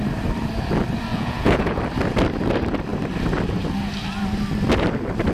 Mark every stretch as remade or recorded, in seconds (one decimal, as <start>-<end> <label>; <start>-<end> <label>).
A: 0.0-1.1 recorded; 1.1-1.8 remade; 1.8-5.3 recorded